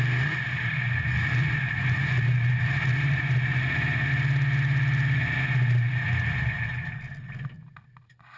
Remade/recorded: recorded